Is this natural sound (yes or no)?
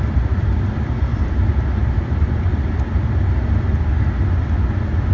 yes